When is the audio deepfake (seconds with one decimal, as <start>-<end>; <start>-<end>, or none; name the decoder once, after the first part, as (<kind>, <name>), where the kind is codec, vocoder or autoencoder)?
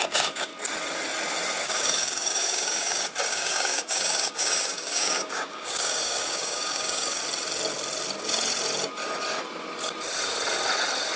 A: 0.0-0.5 (codec, DAC); 1.6-7.2